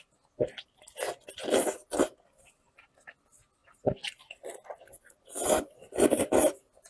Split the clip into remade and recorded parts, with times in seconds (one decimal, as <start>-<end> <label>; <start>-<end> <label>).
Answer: 0.0-6.9 recorded